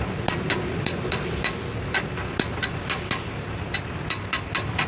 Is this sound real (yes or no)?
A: yes